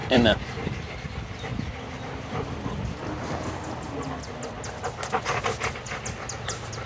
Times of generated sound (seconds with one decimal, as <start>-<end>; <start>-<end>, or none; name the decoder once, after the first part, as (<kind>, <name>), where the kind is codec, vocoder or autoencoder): 0.0-0.9 (vocoder, BigVGAN v2)